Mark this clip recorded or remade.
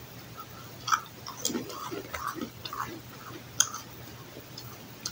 recorded